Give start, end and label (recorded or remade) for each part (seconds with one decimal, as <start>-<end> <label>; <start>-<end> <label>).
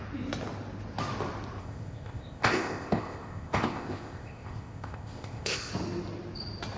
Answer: 0.0-1.6 recorded; 1.6-5.7 remade; 5.7-6.8 recorded